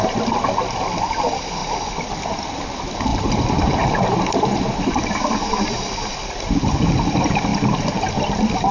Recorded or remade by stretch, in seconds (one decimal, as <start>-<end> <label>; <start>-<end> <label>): 0.0-3.1 recorded; 3.1-4.2 remade; 4.2-8.7 recorded